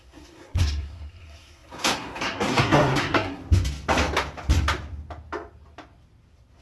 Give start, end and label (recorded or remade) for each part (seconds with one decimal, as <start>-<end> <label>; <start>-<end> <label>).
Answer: 0.0-3.4 remade; 3.4-6.6 recorded